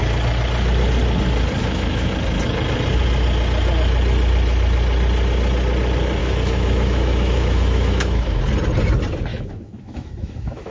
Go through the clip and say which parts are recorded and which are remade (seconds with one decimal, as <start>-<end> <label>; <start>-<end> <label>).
0.0-1.6 recorded; 1.6-2.1 remade; 2.1-6.2 recorded; 6.2-8.4 remade; 8.4-9.3 recorded; 9.3-10.7 remade